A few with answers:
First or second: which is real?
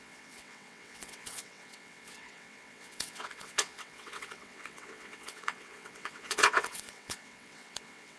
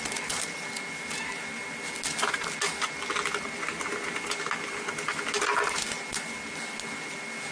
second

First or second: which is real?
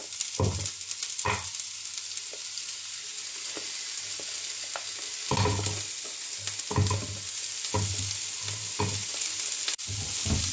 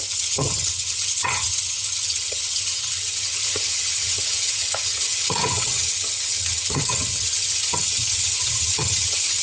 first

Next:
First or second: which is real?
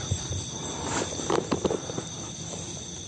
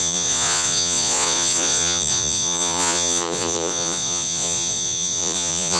first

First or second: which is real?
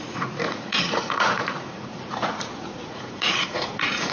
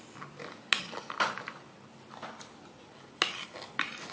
second